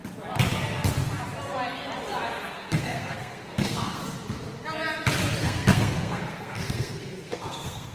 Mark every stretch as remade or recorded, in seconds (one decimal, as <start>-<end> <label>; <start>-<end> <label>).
0.0-2.5 recorded; 2.5-4.0 remade; 4.0-5.4 recorded; 5.4-7.9 remade